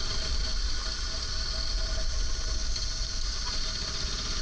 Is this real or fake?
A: real